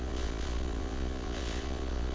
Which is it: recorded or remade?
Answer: remade